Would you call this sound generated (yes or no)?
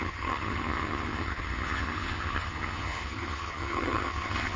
yes